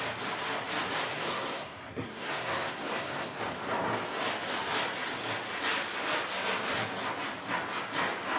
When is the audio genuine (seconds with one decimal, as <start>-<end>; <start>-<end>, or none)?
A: 0.0-1.1; 3.4-8.4